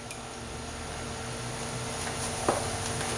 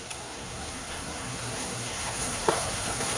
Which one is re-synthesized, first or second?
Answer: second